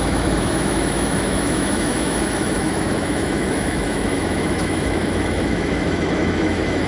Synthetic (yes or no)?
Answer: yes